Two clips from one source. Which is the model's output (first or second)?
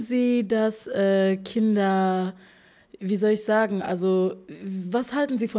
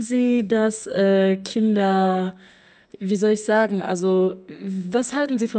second